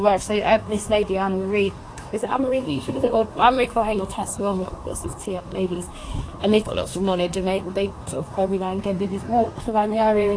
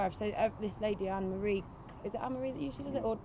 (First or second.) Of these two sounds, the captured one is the second